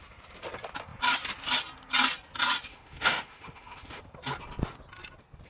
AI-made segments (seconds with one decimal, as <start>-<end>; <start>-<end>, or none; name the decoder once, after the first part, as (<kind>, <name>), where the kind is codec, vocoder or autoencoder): 2.7-4.0 (autoencoder, DAC-VAE)